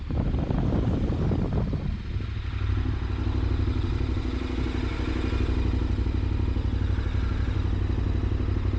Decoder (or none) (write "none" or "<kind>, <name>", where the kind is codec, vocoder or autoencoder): none